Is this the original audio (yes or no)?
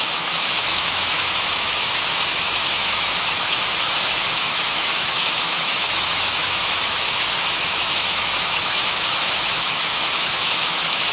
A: no